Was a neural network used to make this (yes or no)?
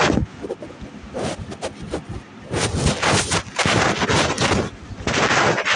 no